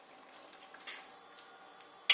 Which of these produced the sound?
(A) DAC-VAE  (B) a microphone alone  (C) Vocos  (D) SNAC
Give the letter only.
B